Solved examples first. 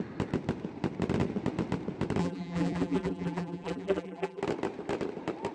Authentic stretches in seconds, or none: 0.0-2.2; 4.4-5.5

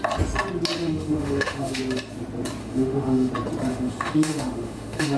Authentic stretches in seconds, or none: 0.0-0.8; 1.8-2.6; 3.3-3.7